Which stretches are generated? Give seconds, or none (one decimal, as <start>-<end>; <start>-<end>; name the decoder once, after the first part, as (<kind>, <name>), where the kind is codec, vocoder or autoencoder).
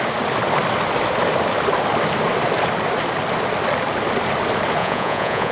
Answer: 4.8-5.5 (vocoder, Vocos)